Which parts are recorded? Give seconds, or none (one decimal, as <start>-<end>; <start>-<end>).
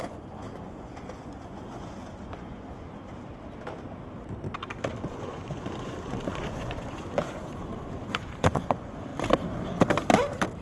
3.1-5.1; 9.1-10.6